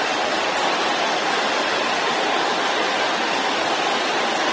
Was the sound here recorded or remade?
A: recorded